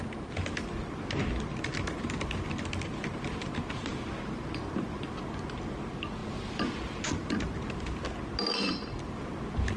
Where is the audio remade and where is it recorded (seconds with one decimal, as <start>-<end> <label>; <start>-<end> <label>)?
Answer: 0.0-9.8 recorded